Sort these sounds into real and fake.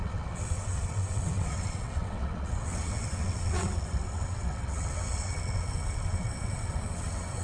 fake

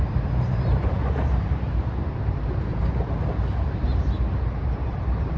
fake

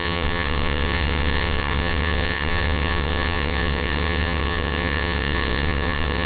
fake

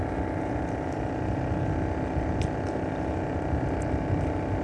real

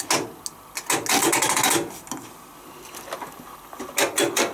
real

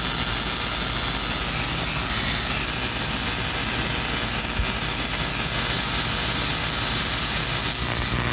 real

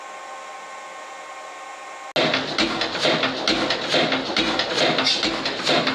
real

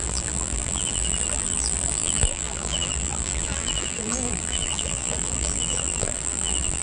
fake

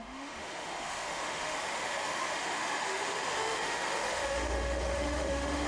fake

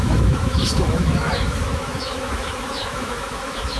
fake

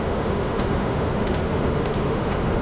fake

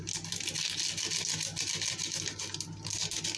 real